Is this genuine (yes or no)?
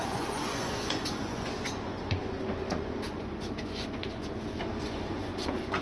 no